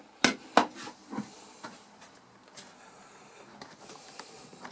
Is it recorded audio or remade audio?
recorded